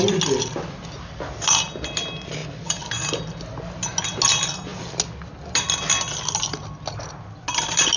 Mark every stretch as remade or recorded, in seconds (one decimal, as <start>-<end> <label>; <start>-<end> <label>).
0.0-8.0 recorded